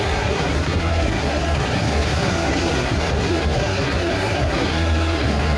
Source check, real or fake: fake